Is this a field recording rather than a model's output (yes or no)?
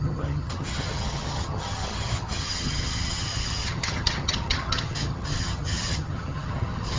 no